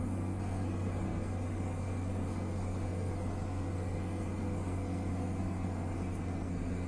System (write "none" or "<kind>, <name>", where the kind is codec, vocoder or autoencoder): codec, SNAC